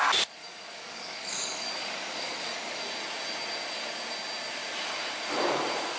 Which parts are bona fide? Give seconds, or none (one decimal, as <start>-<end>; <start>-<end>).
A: 0.0-0.4; 2.8-6.0